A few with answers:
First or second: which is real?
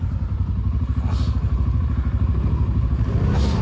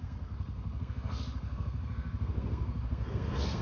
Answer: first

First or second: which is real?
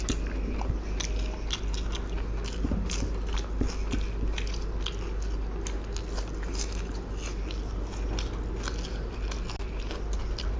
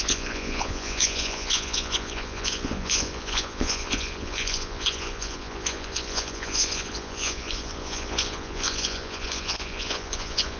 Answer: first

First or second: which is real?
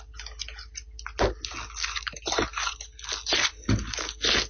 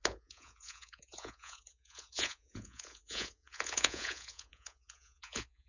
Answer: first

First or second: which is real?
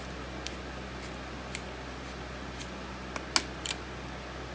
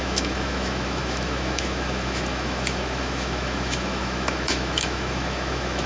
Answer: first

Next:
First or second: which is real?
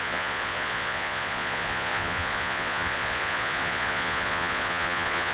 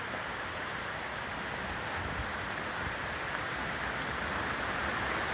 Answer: second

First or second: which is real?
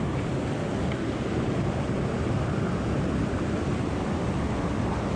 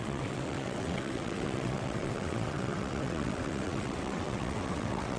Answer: first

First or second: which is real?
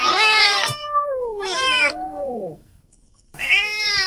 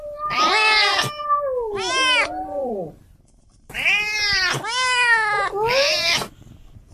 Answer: second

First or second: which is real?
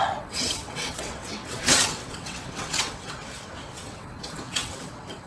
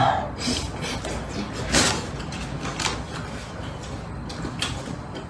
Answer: second